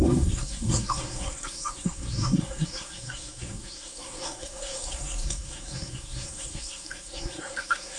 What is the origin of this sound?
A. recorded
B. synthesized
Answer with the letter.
B